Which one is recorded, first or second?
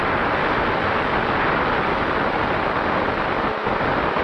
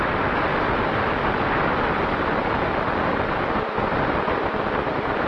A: first